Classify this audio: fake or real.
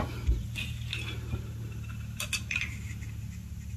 real